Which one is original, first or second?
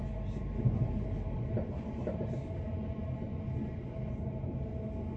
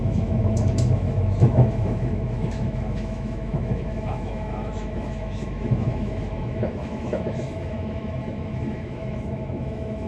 first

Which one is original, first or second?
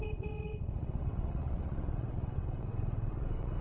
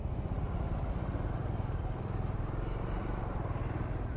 second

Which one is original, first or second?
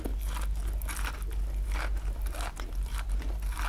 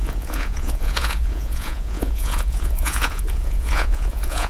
first